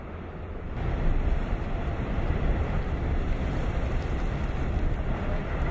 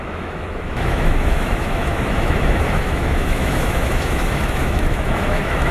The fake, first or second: second